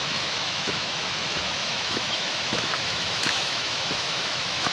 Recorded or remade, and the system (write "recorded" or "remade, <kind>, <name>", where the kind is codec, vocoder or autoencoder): remade, autoencoder, DAC-VAE